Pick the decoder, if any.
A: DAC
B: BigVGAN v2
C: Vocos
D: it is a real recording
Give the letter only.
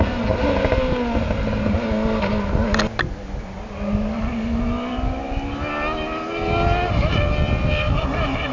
D